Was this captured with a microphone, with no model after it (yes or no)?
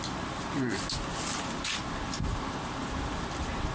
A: yes